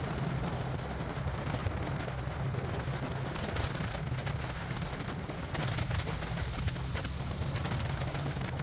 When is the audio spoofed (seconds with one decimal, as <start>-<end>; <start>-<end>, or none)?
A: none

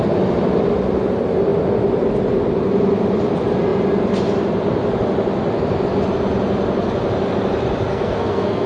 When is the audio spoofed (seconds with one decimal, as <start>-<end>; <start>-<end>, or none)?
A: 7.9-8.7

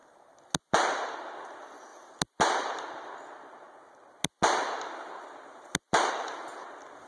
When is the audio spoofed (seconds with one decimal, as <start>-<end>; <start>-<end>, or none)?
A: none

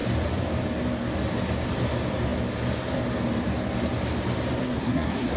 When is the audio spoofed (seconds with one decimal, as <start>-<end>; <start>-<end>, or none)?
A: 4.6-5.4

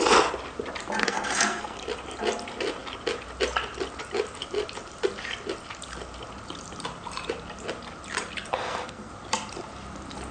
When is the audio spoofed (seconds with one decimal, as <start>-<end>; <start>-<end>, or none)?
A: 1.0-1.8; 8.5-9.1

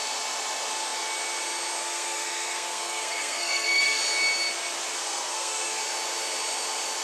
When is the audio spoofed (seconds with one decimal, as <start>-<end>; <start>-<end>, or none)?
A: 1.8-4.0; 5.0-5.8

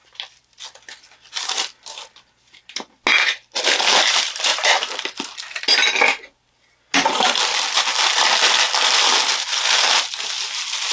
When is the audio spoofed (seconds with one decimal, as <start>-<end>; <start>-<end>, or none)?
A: none

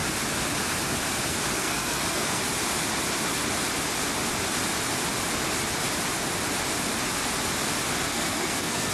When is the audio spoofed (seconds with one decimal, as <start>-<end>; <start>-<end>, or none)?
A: 1.3-2.4; 8.1-8.9